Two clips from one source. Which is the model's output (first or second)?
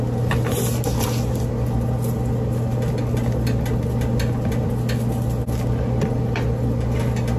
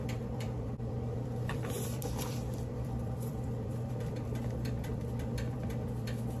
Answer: second